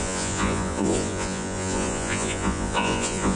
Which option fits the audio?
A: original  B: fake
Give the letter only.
B